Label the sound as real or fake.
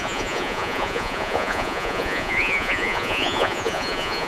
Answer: fake